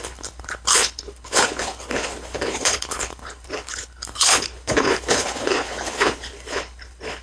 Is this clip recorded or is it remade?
remade